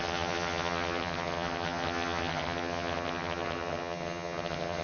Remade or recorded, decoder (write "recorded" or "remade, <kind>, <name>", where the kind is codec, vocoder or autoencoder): remade, vocoder, HiFi-GAN